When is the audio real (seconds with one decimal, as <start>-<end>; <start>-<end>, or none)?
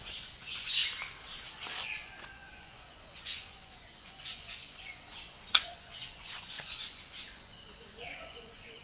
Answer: 0.8-1.8